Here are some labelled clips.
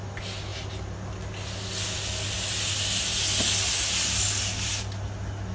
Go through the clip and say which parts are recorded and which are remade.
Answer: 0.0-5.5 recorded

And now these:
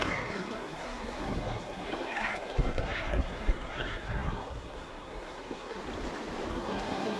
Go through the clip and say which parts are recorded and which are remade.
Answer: 0.0-5.8 remade; 5.8-6.5 recorded; 6.5-7.2 remade

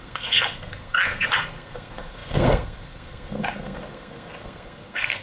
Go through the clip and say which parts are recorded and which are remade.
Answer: 0.0-5.2 remade